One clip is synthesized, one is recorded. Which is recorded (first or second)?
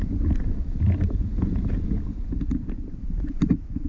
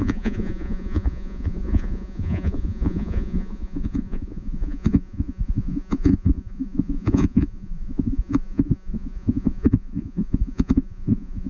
first